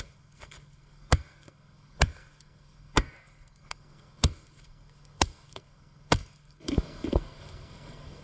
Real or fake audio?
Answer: fake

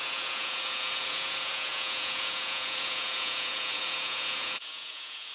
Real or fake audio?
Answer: fake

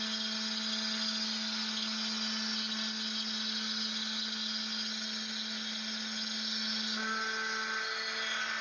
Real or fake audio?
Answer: real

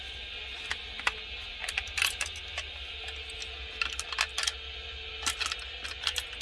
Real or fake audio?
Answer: real